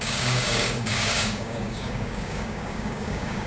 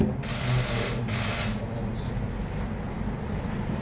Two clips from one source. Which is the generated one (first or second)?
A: first